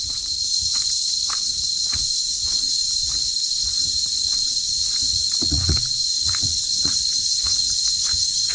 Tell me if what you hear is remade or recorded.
remade